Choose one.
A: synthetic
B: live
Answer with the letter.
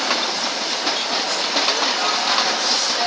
B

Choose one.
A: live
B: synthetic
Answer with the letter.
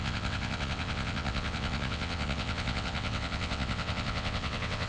B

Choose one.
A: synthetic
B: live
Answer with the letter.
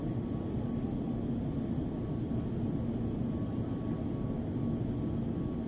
B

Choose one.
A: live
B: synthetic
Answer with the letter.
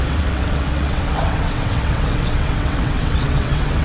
B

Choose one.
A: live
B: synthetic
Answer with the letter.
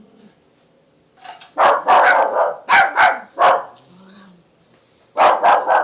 A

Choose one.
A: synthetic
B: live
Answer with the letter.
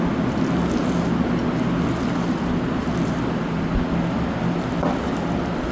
B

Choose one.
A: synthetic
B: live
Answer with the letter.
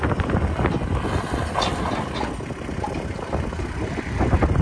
B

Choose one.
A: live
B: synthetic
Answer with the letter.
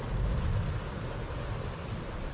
A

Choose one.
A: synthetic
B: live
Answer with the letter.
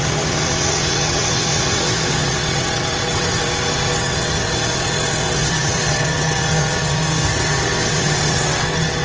A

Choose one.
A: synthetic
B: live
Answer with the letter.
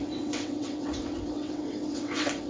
A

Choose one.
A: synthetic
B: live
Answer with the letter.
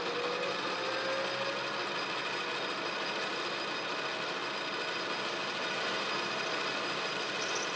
B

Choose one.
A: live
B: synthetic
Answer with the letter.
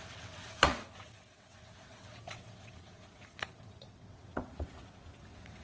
B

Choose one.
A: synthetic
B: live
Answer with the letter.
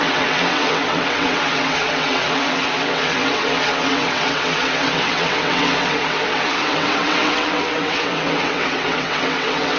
A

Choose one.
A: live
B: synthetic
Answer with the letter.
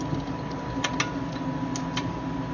A